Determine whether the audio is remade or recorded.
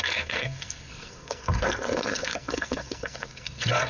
remade